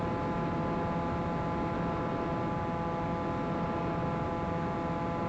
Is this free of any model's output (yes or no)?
yes